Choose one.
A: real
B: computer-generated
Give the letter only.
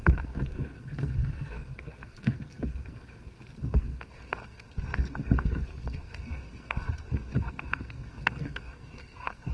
B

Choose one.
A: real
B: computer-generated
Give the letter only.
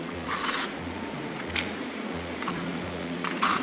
B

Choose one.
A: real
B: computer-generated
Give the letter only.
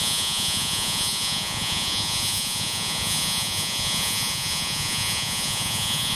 B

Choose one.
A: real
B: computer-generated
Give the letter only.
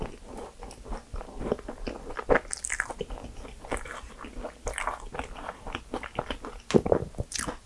A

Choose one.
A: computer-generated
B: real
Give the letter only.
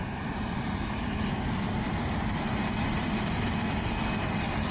B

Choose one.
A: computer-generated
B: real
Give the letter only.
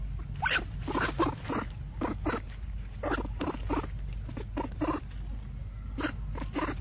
B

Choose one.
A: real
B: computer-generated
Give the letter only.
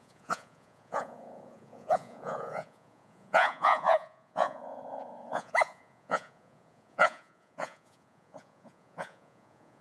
B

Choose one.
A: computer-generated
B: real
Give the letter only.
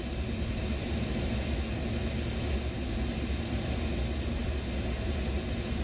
B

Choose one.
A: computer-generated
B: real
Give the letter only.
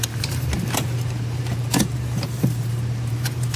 A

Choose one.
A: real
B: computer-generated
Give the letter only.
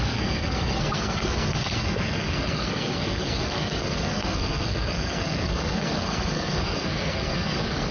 B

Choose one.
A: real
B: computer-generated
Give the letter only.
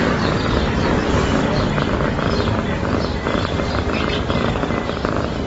A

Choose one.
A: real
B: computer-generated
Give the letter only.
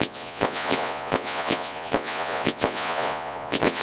B